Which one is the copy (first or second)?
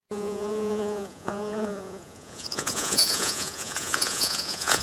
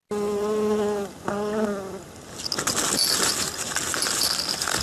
first